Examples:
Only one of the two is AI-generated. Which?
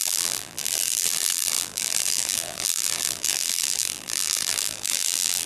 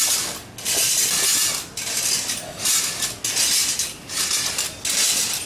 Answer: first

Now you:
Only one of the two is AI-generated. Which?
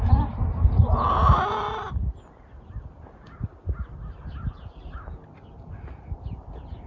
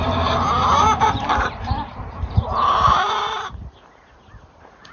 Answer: second